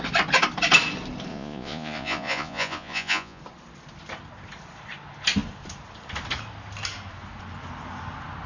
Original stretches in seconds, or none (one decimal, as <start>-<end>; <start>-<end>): 0.0-1.3; 3.4-8.5